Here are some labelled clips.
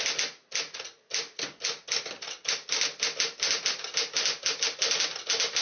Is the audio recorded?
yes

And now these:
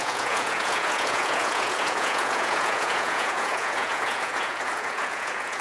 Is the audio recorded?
no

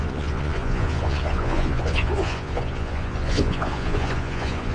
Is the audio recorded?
no